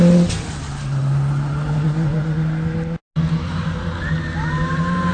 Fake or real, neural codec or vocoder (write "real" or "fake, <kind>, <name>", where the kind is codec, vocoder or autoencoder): real